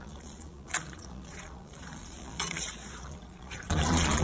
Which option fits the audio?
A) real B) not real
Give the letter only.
B